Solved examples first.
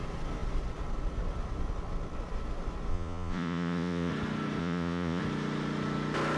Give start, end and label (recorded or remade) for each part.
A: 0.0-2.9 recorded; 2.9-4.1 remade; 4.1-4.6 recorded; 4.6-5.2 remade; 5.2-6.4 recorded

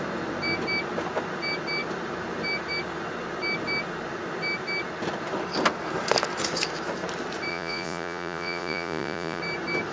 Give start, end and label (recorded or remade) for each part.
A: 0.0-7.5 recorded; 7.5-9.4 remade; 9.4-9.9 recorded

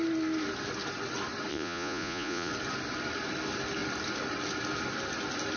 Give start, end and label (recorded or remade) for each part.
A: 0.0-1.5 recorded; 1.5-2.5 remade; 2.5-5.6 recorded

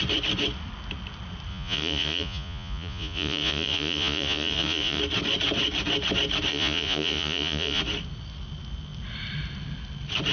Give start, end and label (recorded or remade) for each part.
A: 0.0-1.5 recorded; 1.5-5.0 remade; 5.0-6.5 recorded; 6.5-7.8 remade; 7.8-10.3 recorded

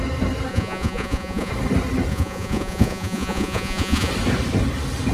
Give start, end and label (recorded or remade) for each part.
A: 0.0-0.5 recorded; 0.5-1.5 remade; 1.5-2.1 recorded; 2.1-4.1 remade; 4.1-5.1 recorded